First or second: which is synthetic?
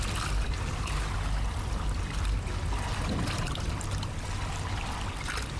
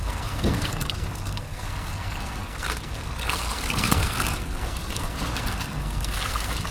second